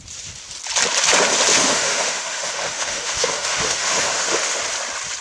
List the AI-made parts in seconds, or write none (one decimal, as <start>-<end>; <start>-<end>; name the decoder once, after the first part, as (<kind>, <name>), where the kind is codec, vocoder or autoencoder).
1.5-4.6 (autoencoder, DAC-VAE)

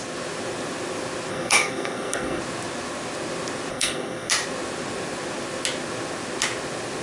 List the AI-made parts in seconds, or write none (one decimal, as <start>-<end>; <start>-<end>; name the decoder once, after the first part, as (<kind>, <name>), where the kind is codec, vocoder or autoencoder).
1.3-2.4 (codec, SNAC); 3.7-4.3

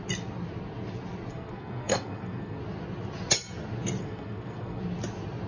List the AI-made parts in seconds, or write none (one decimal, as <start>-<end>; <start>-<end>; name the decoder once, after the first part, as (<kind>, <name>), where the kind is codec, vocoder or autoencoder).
1.3-2.6 (codec, SNAC); 4.0-4.8

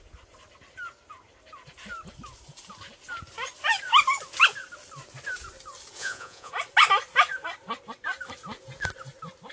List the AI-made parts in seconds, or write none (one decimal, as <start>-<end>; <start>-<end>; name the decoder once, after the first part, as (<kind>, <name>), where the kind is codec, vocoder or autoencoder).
6.0-6.5 (vocoder, Vocos)